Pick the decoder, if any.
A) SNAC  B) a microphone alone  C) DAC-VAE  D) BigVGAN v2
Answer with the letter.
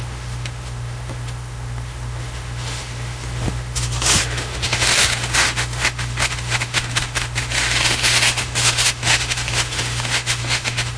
C